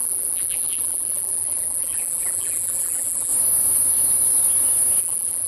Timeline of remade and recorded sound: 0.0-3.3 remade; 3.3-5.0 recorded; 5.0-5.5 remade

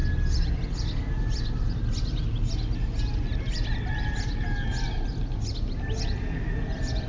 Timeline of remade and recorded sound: 0.0-7.1 recorded

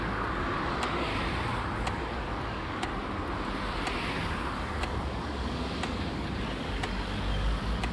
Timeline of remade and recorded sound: 0.0-1.1 remade; 1.1-1.9 recorded; 1.9-2.9 remade; 2.9-4.2 recorded; 4.2-7.9 remade

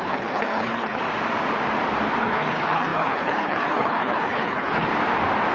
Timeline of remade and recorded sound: 0.0-1.0 remade; 1.0-2.2 recorded; 2.2-4.9 remade; 4.9-5.5 recorded

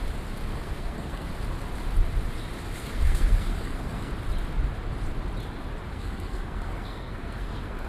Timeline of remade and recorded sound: 0.0-0.5 recorded; 0.5-1.3 remade; 1.3-2.8 recorded; 2.8-4.1 remade; 4.1-5.9 recorded; 5.9-7.9 remade